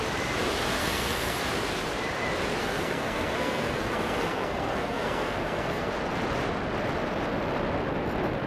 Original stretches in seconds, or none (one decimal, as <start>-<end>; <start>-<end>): 0.0-0.8; 1.4-2.6; 5.9-8.5